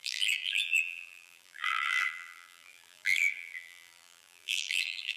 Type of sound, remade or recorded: remade